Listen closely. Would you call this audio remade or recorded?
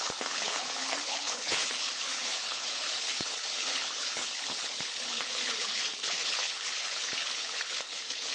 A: remade